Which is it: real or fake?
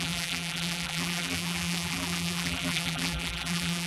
fake